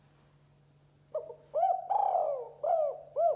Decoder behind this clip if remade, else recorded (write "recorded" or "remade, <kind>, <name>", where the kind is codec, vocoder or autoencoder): recorded